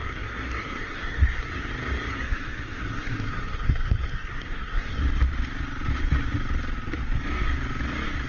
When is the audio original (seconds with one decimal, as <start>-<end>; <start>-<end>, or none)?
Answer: 1.7-2.1; 5.0-8.3

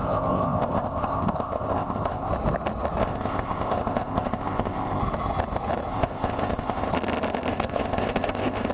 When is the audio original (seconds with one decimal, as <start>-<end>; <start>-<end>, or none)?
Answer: 2.3-3.0; 5.0-5.9; 6.9-7.5

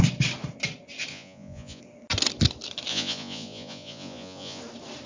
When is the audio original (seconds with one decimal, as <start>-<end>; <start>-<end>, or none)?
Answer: 0.0-1.1; 1.8-2.9; 4.6-5.1

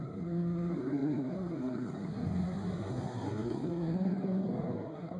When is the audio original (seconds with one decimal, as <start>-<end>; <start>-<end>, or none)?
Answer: none